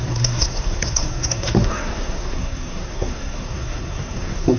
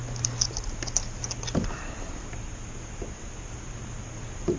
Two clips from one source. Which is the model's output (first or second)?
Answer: first